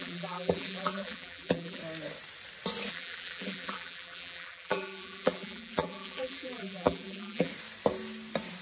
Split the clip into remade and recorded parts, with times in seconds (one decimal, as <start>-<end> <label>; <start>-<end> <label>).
0.0-1.8 remade; 1.8-2.9 recorded; 2.9-7.5 remade; 7.5-8.6 recorded